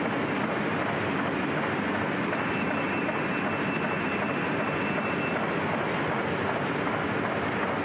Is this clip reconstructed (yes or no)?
no